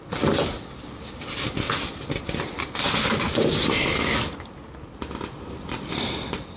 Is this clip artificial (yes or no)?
no